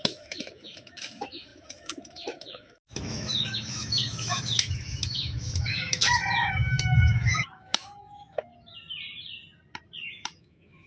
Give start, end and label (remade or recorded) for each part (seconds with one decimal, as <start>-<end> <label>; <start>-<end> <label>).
0.0-8.5 remade; 8.5-10.0 recorded; 10.0-10.9 remade